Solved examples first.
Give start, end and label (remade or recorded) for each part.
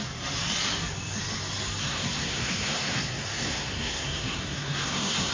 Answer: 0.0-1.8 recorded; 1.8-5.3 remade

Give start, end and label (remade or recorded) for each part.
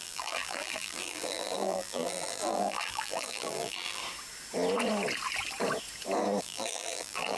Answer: 0.0-4.0 remade; 4.0-6.4 recorded; 6.4-7.4 remade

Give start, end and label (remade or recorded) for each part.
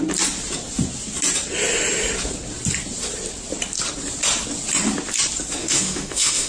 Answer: 0.0-5.6 recorded; 5.6-6.5 remade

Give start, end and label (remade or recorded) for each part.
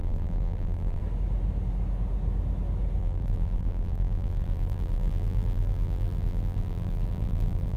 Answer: 0.0-1.0 remade; 1.0-3.0 recorded; 3.0-7.8 remade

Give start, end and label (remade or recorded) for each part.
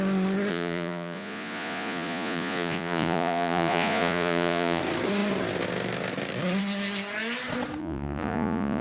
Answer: 0.0-0.5 recorded; 0.5-4.8 remade; 4.8-7.8 recorded; 7.8-8.8 remade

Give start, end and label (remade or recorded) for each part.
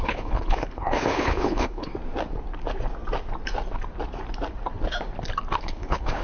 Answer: 0.0-1.9 remade; 1.9-5.6 recorded; 5.6-6.2 remade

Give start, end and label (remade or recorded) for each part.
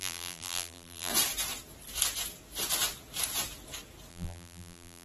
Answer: 0.0-1.1 remade; 1.1-4.1 recorded; 4.1-5.0 remade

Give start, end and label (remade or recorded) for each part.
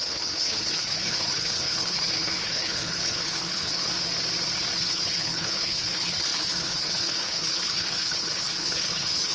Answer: 0.0-3.9 remade; 3.9-4.8 recorded; 4.8-9.3 remade